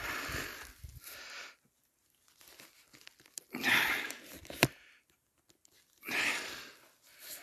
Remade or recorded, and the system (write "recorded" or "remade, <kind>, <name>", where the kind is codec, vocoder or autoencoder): recorded